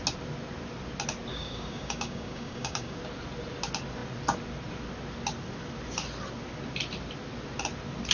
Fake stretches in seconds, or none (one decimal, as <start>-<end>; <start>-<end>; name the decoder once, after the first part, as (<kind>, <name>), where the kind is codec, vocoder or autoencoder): 1.3-3.0 (codec, DAC)